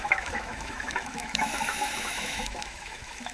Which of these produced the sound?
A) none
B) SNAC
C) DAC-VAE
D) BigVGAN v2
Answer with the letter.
C